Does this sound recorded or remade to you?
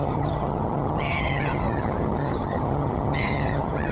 remade